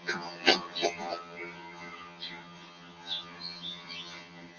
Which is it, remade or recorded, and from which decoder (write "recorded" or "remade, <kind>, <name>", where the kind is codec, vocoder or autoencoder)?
remade, vocoder, HiFi-GAN